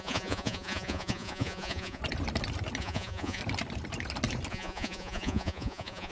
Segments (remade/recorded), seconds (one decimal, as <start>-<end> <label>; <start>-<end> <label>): 0.0-2.0 remade; 2.0-2.8 recorded; 2.8-3.4 remade; 3.4-4.5 recorded; 4.5-6.1 remade